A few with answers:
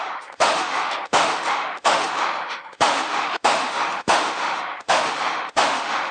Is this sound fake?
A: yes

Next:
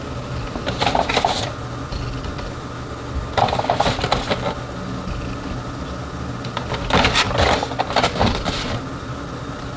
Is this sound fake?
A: no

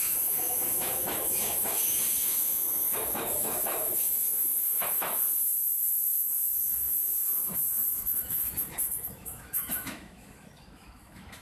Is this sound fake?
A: yes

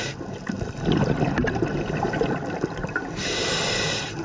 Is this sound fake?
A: no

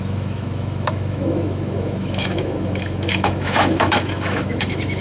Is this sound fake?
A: yes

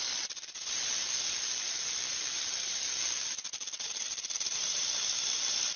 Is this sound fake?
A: yes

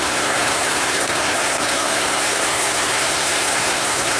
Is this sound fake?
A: yes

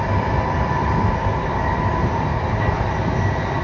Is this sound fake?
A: no